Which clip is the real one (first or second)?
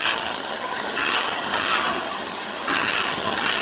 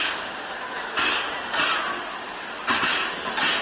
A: second